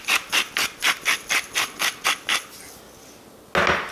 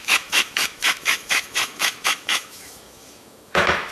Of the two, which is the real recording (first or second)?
first